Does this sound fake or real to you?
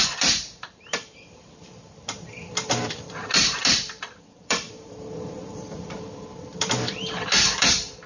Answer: fake